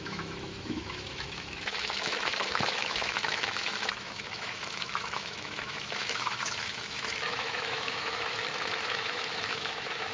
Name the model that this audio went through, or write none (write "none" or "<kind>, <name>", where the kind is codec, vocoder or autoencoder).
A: autoencoder, DAC-VAE